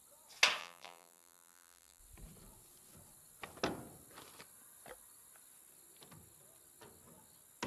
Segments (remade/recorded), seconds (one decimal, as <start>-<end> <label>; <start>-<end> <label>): 0.0-0.6 recorded; 0.6-2.0 remade; 2.0-7.7 recorded